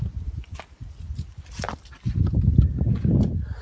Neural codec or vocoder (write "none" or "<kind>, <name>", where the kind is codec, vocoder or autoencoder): none